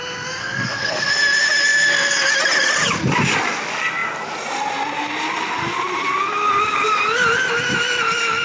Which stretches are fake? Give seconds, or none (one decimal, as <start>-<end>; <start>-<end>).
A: 0.4-1.1